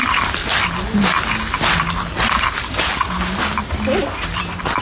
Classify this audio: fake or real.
real